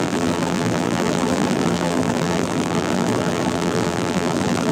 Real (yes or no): no